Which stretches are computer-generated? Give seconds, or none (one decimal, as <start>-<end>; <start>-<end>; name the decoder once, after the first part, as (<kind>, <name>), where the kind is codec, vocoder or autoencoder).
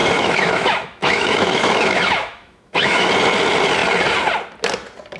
0.0-3.1 (autoencoder, DAC-VAE)